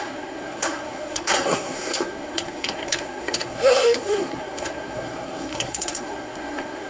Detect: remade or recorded remade